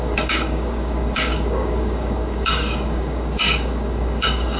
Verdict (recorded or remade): remade